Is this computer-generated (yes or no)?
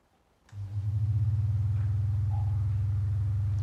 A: no